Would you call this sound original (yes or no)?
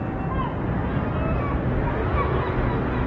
yes